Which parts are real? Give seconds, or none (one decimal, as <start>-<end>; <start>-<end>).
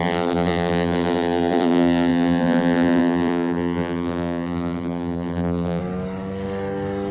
5.8-7.1